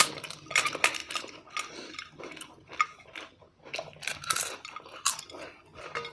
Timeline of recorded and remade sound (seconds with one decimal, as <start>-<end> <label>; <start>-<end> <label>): 0.0-6.1 recorded